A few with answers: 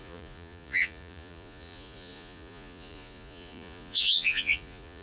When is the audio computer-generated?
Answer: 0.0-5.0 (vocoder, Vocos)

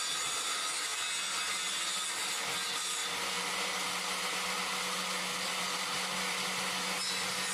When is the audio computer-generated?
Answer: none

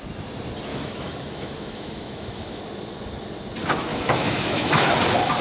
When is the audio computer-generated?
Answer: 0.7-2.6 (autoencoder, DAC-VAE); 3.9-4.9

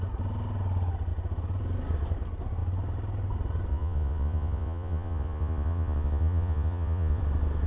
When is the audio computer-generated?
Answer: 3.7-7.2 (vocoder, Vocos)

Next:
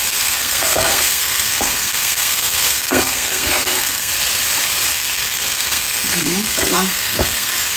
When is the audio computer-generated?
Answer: 0.0-4.1 (codec, SNAC); 4.9-7.8

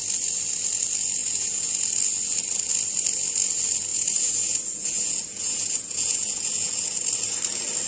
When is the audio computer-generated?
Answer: 1.2-1.8 (vocoder, Vocos); 3.9-7.1

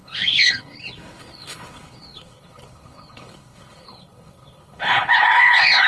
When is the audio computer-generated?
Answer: 0.0-5.9 (codec, HILCodec)